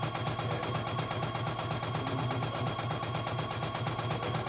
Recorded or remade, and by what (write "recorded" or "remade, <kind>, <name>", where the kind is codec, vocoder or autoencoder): recorded